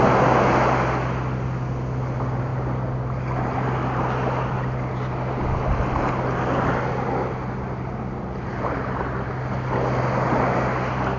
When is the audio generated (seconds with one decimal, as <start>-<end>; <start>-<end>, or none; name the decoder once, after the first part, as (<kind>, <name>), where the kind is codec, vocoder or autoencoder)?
none